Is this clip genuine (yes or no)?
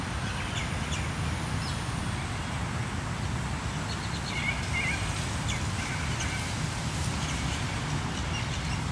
yes